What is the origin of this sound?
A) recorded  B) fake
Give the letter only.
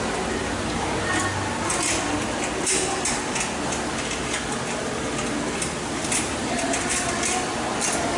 A